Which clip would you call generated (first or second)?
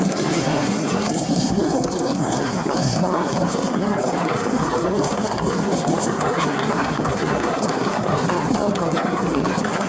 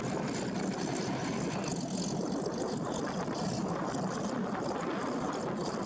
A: first